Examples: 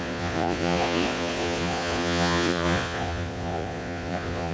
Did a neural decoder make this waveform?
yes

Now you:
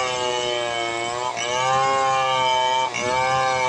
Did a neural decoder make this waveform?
no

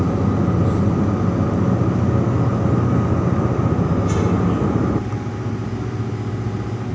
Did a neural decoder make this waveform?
no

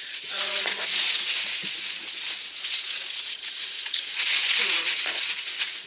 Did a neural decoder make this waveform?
yes